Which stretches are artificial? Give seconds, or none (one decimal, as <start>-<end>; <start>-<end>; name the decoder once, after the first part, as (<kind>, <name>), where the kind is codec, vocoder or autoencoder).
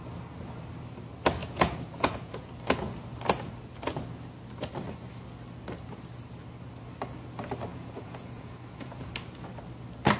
1.4-2.5 (vocoder, Vocos); 7.7-9.1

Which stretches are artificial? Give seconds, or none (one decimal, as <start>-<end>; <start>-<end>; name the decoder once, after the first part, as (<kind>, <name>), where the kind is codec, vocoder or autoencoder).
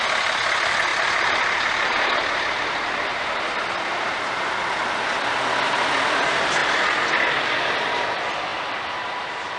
0.9-4.6 (vocoder, BigVGAN v2)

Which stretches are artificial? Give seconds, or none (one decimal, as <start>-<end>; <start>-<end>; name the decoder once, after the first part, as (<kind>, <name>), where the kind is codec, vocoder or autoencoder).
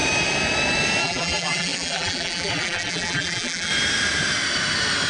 1.0-3.7 (vocoder, BigVGAN v2)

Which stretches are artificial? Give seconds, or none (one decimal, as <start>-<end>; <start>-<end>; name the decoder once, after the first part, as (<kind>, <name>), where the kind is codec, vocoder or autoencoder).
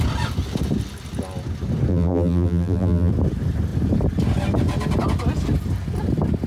1.9-3.1 (vocoder, BigVGAN v2)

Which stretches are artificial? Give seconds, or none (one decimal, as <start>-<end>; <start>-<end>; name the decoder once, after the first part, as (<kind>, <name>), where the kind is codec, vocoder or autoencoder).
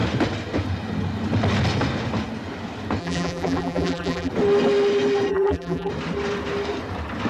3.0-4.3 (vocoder, BigVGAN v2); 5.3-5.9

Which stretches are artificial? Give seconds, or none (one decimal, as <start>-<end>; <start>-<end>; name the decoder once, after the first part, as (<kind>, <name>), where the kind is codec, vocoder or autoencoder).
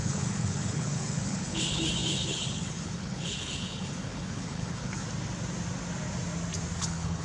0.0-5.0 (codec, HILCodec); 6.8-7.2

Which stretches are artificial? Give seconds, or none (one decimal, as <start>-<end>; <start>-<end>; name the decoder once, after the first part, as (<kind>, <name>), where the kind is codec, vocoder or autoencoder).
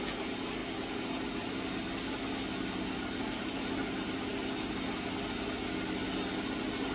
none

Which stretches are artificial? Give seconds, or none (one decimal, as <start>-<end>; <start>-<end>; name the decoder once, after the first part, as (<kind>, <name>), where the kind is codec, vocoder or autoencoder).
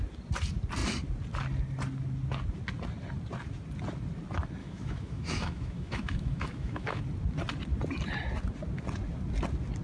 4.6-7.0 (autoencoder, DAC-VAE)